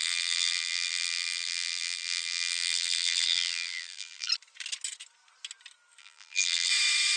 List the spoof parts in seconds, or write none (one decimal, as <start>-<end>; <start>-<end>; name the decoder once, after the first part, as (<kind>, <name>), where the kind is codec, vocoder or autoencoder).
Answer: 0.0-4.3 (vocoder, BigVGAN v2); 6.0-6.7

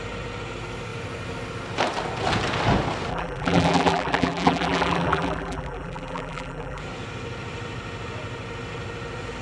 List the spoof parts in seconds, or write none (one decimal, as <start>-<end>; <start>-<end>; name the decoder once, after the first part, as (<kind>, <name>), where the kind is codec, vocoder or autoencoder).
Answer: 3.1-6.8 (vocoder, BigVGAN v2)